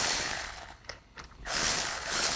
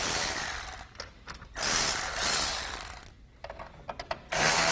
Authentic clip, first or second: second